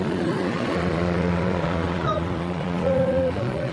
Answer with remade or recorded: remade